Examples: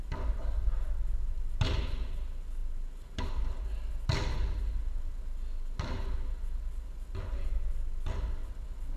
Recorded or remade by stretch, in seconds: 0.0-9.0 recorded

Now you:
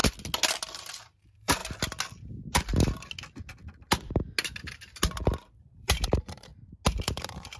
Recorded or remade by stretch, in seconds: 0.0-1.0 recorded; 1.0-1.6 remade; 1.6-5.6 recorded; 5.6-6.5 remade; 6.5-7.0 recorded; 7.0-7.6 remade

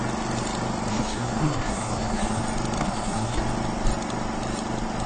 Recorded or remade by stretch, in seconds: 0.0-0.9 recorded; 0.9-2.4 remade; 2.4-2.8 recorded; 2.8-3.4 remade; 3.4-5.1 recorded

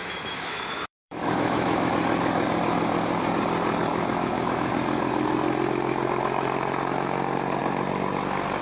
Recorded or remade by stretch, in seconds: 0.0-1.9 remade; 1.9-3.9 recorded; 3.9-4.7 remade; 4.7-8.6 recorded

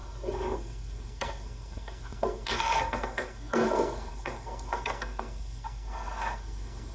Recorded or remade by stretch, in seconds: 0.0-6.9 remade

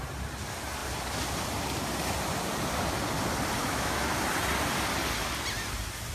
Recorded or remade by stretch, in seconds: 0.0-3.6 recorded; 3.6-4.1 remade; 4.1-6.1 recorded

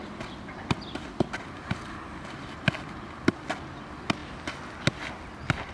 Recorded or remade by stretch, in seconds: 0.0-3.4 remade; 3.4-5.7 recorded